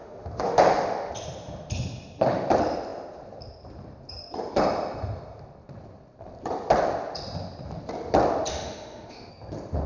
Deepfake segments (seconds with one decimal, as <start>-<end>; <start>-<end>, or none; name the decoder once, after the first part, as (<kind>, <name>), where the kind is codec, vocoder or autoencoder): 0.0-1.1 (autoencoder, DAC-VAE); 8.5-9.3